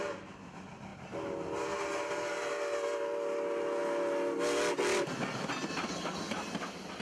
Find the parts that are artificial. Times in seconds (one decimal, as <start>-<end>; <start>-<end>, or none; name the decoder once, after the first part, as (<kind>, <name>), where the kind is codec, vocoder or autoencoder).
none